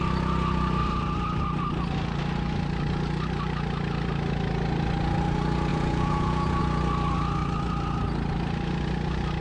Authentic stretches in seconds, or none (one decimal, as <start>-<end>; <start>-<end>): 0.0-5.7; 6.6-9.4